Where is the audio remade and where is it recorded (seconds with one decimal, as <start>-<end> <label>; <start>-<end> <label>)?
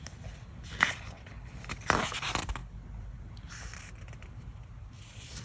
0.0-5.4 recorded